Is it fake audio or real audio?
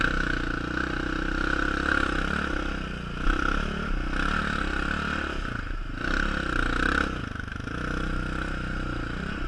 real